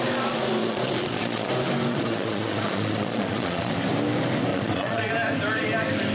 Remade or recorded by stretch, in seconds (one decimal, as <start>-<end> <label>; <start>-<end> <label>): 0.0-0.6 recorded; 0.6-1.5 remade; 1.5-1.9 recorded; 1.9-3.7 remade; 3.7-4.5 recorded; 4.5-5.1 remade; 5.1-6.1 recorded